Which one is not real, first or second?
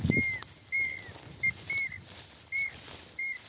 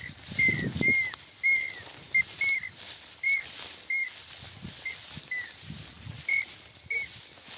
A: second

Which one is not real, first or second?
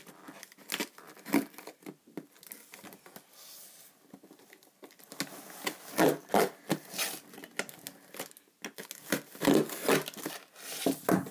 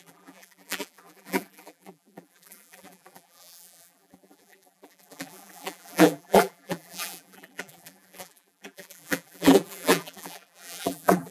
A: second